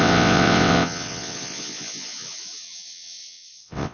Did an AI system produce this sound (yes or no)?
yes